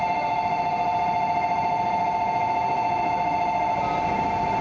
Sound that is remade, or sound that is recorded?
recorded